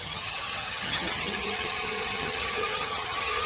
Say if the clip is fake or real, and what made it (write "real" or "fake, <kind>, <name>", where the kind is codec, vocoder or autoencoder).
fake, vocoder, HiFi-GAN